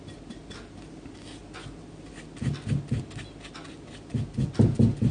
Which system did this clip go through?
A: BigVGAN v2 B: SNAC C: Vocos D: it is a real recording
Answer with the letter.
D